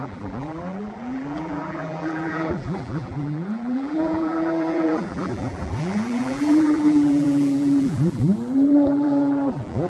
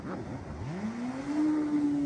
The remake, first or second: first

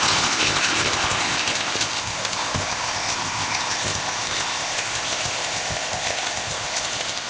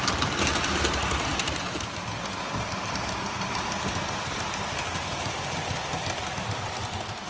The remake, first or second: first